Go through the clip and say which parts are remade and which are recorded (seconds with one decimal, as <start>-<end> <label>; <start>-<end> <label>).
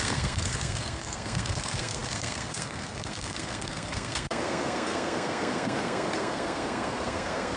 0.0-7.6 remade